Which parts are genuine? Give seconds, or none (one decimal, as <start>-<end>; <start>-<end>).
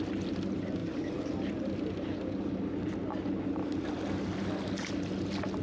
0.0-5.6